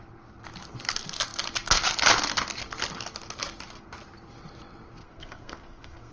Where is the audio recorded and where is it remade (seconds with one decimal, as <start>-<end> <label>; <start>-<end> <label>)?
0.0-5.0 recorded; 5.0-6.1 remade